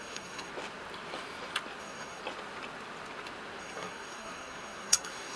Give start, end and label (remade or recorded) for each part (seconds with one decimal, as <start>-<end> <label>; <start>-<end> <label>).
0.0-0.5 remade; 0.5-1.8 recorded; 1.8-2.2 remade; 2.2-3.6 recorded; 3.6-5.4 remade